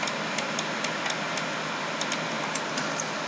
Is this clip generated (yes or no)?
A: no